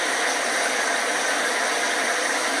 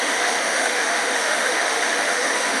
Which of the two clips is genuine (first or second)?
first